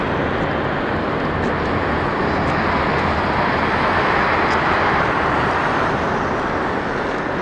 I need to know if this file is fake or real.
real